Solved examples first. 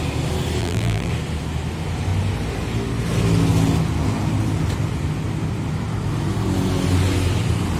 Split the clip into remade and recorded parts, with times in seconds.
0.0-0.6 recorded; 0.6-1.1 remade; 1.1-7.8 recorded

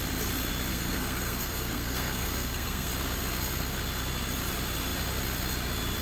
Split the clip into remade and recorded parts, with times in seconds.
0.0-0.7 recorded; 0.7-2.9 remade; 2.9-6.0 recorded

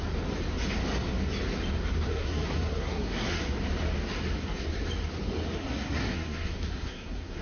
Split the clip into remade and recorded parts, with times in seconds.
0.0-2.1 recorded; 2.1-3.5 remade; 3.5-5.6 recorded; 5.6-7.4 remade

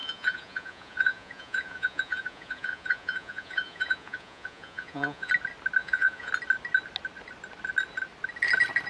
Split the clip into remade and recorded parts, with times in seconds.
0.0-5.3 remade; 5.3-5.8 recorded; 5.8-6.3 remade; 6.3-8.9 recorded

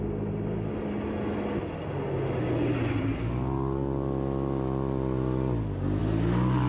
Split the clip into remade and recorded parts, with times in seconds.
0.0-6.7 recorded

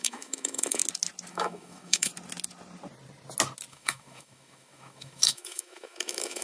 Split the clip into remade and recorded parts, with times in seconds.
0.0-0.8 remade; 0.8-1.3 recorded; 1.3-2.1 remade; 2.1-3.7 recorded; 3.7-6.4 remade